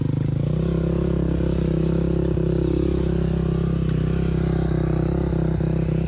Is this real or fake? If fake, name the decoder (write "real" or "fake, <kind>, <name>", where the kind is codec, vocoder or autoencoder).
real